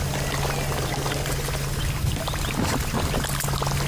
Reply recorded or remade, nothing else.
recorded